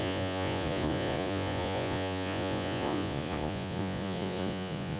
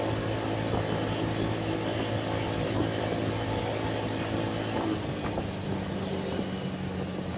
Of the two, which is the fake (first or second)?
first